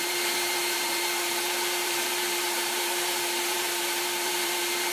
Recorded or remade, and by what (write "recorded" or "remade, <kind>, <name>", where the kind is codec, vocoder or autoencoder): remade, vocoder, BigVGAN v2